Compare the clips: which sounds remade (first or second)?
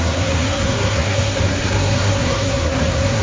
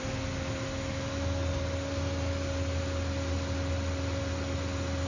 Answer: first